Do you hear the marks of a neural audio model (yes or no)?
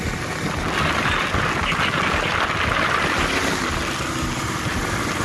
no